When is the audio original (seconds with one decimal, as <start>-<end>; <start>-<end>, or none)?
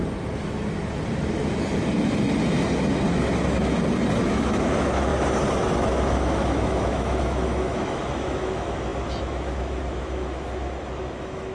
0.0-4.2; 5.1-5.7